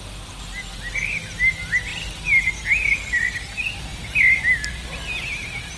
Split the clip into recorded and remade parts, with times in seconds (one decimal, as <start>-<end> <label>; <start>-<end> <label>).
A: 0.0-5.8 recorded